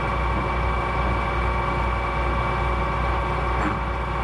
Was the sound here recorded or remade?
recorded